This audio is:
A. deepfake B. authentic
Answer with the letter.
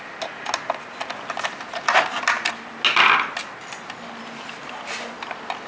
B